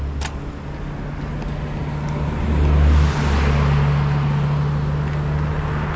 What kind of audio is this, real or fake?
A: real